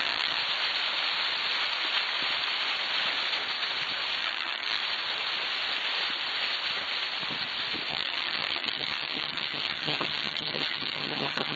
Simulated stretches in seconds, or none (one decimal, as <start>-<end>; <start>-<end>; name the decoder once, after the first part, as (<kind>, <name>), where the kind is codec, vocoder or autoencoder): 0.0-0.4 (vocoder, HiFi-GAN); 4.2-4.8; 7.9-11.6